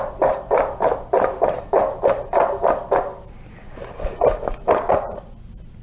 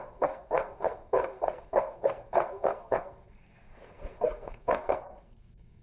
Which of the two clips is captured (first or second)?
first